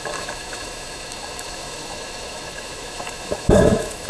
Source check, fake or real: fake